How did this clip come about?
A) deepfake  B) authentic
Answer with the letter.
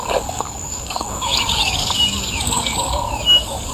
A